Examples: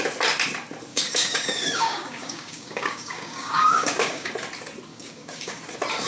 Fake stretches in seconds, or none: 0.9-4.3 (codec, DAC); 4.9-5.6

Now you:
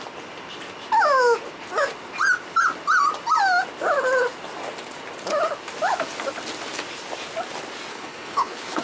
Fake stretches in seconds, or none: 7.9-8.8 (codec, HILCodec)

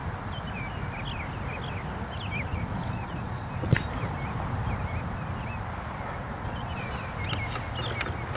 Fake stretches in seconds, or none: 2.5-3.7 (vocoder, Vocos); 6.3-7.1